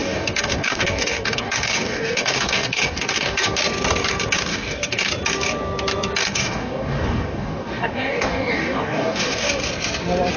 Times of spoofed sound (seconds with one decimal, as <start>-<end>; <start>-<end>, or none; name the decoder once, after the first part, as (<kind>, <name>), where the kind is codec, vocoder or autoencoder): 0.0-3.6 (codec, DAC); 4.5-5.1; 6.2-9.5